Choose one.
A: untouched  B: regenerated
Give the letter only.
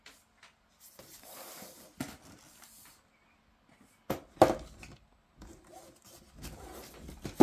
A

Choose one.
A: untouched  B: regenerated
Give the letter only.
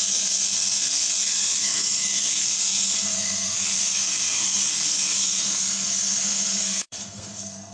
B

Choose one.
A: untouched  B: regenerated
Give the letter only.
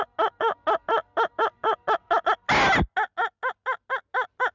A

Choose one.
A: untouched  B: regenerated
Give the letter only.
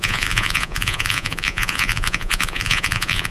B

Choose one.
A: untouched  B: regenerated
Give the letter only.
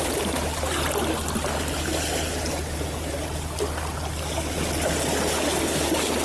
A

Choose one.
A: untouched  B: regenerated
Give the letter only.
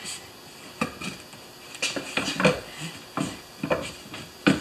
A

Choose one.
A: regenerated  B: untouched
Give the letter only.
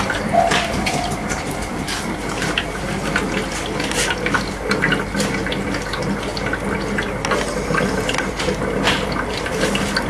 B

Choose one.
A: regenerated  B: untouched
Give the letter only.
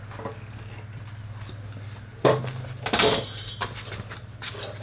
B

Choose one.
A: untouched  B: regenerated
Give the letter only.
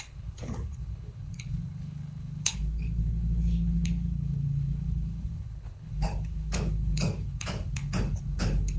B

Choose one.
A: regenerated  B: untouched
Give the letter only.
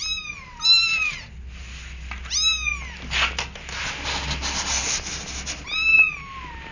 B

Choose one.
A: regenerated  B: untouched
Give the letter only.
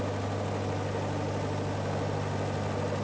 B